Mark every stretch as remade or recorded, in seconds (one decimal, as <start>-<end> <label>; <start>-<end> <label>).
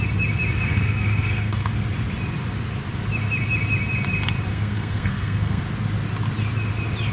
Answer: 0.0-0.7 recorded; 0.7-1.7 remade; 1.7-4.5 recorded; 4.5-5.6 remade; 5.6-7.1 recorded